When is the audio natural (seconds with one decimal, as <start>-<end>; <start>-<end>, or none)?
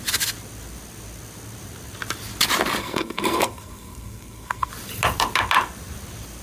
0.0-2.8; 4.7-6.4